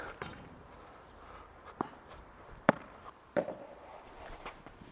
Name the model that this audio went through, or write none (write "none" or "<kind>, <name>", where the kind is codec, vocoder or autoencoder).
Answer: vocoder, BigVGAN v2